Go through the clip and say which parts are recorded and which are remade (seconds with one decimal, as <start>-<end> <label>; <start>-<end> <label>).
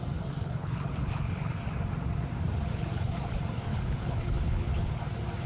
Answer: 0.0-0.4 recorded; 0.4-1.6 remade; 1.6-2.7 recorded; 2.7-3.3 remade; 3.3-3.7 recorded; 3.7-4.9 remade; 4.9-5.5 recorded